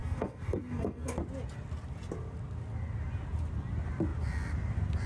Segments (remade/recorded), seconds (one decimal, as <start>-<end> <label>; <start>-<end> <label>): 0.0-1.2 remade; 1.2-5.1 recorded